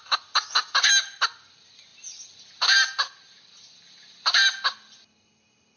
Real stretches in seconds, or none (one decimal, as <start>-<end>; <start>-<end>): 0.0-5.8